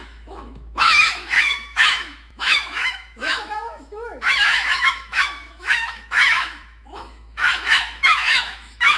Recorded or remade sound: remade